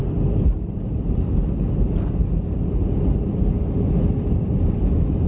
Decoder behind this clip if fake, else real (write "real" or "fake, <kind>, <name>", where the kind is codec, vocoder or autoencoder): real